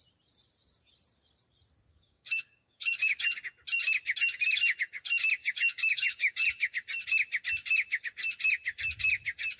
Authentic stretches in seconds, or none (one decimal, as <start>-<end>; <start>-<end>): 0.0-1.9; 3.2-5.4; 6.4-9.6